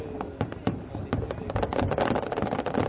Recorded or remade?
recorded